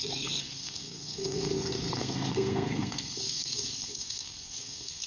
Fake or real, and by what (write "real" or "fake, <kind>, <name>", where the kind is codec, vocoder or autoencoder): fake, codec, SNAC